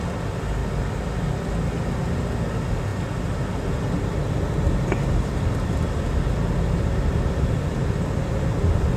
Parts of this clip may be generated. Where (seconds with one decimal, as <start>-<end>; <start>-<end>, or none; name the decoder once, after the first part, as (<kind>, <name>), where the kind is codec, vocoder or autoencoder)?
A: none